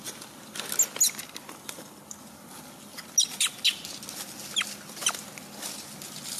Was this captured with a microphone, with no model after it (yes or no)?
yes